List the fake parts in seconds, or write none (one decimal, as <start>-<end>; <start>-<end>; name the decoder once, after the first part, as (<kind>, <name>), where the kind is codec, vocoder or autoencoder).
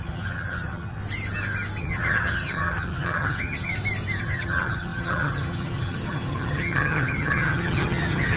0.0-1.0 (vocoder, HiFi-GAN); 1.8-3.7; 4.2-8.4